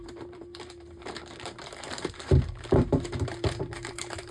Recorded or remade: remade